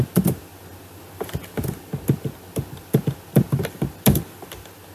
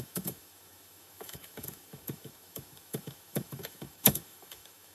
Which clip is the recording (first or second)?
first